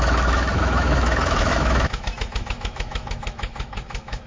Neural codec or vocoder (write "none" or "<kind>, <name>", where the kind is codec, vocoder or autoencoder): autoencoder, DAC-VAE